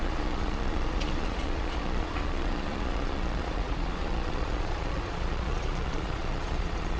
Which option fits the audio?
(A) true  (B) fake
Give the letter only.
B